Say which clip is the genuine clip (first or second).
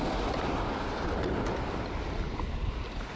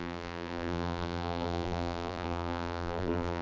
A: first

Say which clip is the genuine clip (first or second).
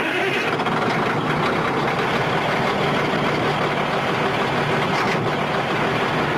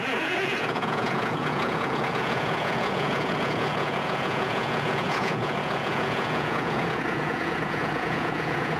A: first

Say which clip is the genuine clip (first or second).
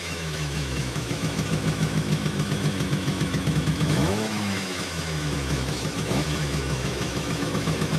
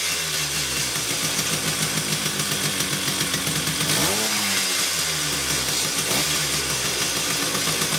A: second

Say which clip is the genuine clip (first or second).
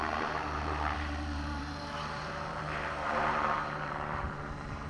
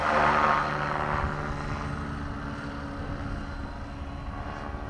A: second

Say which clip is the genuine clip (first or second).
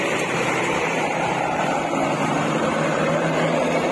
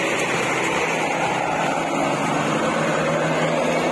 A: second